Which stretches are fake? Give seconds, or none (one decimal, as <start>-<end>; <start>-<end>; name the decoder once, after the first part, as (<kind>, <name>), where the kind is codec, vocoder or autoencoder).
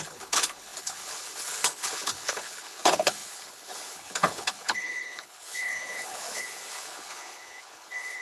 0.0-8.2 (codec, HILCodec)